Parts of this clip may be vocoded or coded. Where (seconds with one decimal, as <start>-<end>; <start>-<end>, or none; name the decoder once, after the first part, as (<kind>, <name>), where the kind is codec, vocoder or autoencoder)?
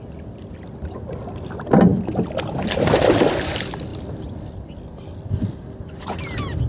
none